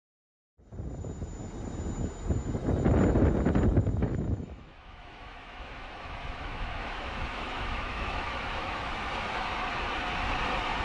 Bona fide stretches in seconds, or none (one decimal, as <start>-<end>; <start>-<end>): 0.0-4.0; 8.9-10.8